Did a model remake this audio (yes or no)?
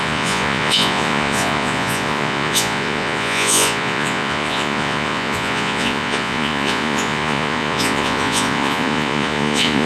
yes